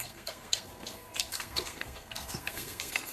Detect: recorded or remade remade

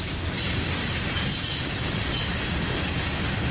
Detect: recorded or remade recorded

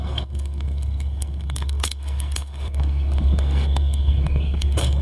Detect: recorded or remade remade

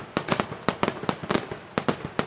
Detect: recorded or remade recorded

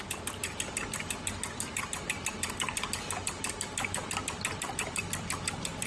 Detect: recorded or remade recorded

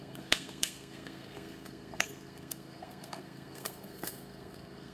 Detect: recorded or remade remade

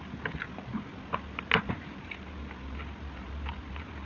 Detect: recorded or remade recorded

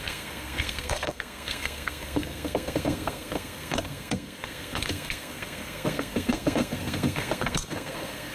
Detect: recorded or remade remade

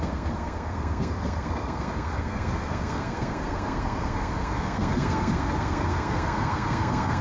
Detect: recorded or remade remade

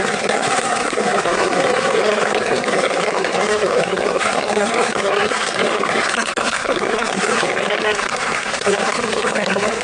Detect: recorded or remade remade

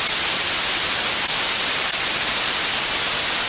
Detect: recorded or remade recorded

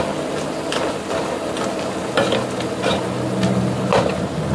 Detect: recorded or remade recorded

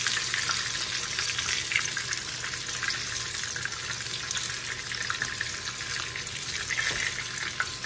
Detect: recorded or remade recorded